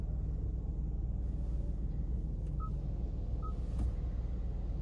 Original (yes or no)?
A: yes